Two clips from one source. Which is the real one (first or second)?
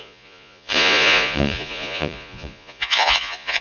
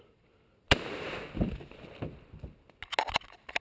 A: second